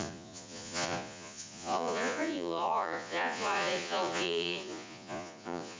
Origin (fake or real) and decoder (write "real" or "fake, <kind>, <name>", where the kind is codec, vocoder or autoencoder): fake, vocoder, Vocos